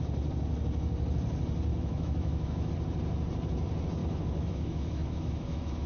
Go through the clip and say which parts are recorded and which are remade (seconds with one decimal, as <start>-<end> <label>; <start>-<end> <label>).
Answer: 0.0-1.7 recorded; 1.7-2.7 remade; 2.7-4.0 recorded; 4.0-5.9 remade